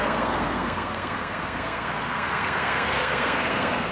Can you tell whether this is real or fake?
fake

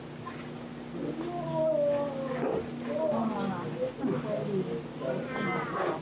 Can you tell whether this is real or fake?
real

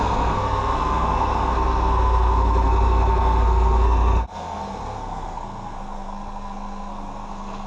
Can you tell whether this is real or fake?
fake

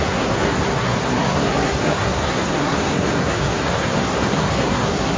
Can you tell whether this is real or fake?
fake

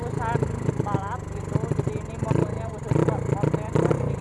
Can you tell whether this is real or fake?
real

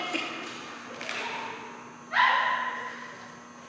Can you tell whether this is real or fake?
real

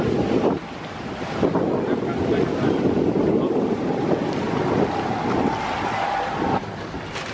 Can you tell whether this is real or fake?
real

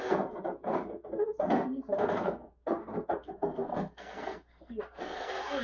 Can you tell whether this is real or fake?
fake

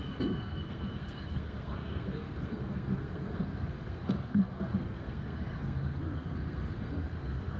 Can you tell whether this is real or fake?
fake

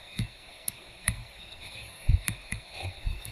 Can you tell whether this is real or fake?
fake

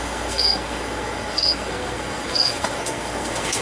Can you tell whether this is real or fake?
fake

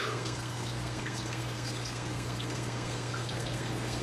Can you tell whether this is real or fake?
fake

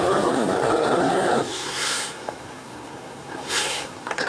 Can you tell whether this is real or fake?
fake